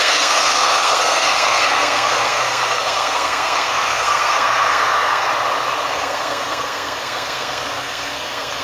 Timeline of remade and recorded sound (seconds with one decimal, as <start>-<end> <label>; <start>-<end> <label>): 0.0-5.3 remade; 5.3-5.9 recorded; 5.9-8.6 remade